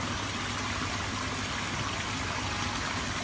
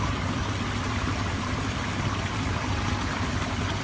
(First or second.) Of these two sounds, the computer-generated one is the second